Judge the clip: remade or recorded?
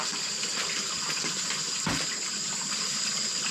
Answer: remade